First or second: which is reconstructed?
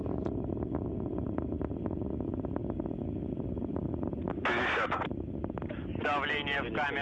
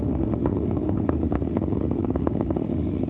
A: second